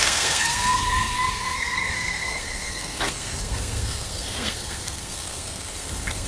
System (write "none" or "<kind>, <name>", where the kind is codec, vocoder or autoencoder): codec, SNAC